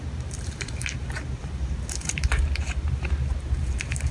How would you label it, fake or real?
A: fake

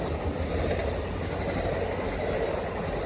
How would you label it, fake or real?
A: real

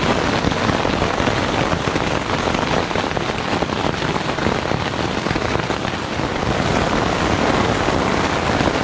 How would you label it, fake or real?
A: real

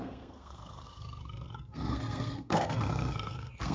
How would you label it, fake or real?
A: fake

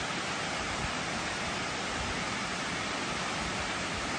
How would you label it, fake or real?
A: real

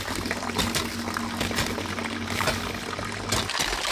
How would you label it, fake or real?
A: real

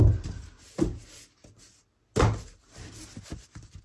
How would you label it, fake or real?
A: real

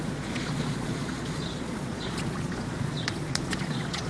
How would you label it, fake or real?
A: fake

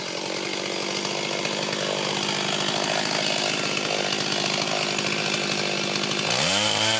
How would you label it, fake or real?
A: real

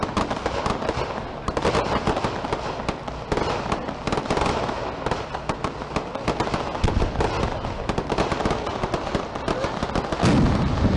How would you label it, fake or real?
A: real